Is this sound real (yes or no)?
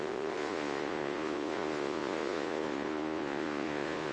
no